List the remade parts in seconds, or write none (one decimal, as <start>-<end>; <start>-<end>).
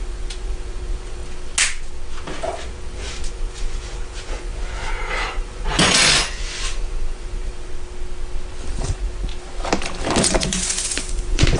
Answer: 0.0-1.2; 3.3-7.5; 8.7-9.3; 10.2-11.6